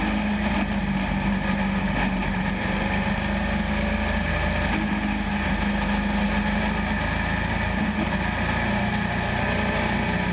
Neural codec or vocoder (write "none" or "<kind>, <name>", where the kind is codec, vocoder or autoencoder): none